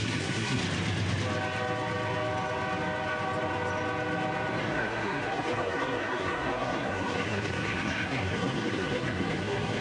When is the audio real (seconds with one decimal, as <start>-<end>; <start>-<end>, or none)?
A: 0.6-4.6